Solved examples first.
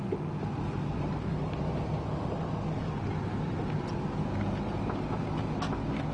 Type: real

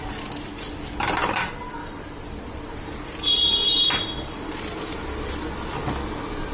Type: real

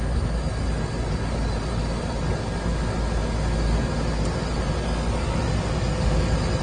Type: real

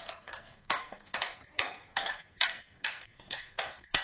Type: fake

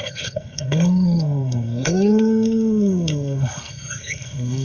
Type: fake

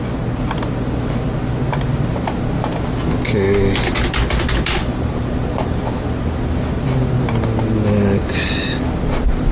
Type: real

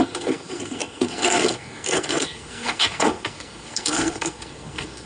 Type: fake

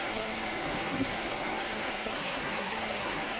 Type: fake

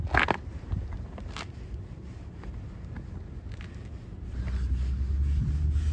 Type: real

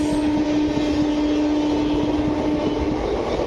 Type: real